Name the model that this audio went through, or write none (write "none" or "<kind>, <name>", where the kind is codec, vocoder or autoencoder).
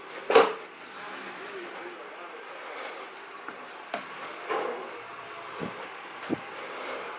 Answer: none